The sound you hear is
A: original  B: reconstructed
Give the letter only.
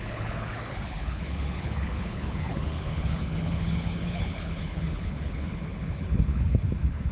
B